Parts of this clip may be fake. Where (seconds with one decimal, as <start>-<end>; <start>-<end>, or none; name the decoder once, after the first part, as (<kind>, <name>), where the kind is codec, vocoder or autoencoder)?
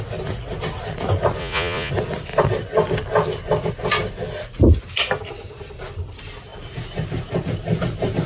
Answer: 1.4-1.9 (vocoder, Vocos)